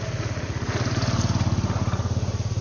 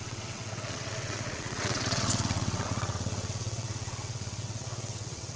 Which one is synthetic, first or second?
second